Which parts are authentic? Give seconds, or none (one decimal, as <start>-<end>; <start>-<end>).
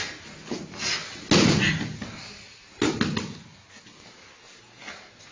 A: 0.0-5.3